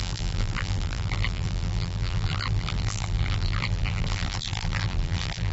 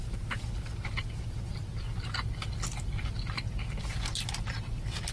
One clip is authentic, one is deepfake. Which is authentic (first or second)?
second